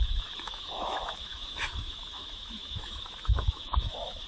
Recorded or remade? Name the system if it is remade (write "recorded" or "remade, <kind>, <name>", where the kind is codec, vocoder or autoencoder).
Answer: remade, autoencoder, DAC-VAE